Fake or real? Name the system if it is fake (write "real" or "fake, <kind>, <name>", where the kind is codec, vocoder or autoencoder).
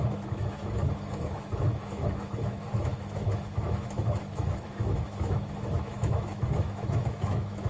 fake, autoencoder, DAC-VAE